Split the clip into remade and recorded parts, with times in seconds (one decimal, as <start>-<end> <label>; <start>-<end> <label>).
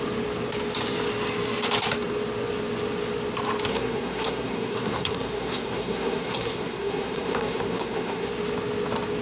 0.0-3.7 recorded; 3.7-8.3 remade; 8.3-9.2 recorded